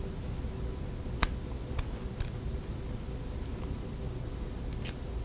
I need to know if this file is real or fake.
real